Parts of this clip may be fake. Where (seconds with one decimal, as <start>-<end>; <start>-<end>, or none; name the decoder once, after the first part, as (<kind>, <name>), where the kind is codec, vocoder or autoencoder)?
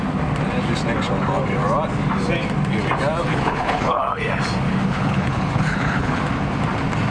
3.3-4.0 (codec, HILCodec); 4.9-6.2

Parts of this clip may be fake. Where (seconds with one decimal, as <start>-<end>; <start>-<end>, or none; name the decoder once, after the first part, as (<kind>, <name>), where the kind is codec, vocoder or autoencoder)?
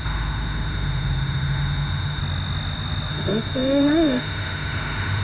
0.0-2.2 (autoencoder, DAC-VAE); 3.1-5.2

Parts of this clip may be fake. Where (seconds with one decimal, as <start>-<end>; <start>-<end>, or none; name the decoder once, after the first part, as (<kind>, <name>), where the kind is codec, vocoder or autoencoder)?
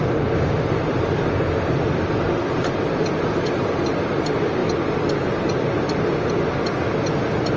none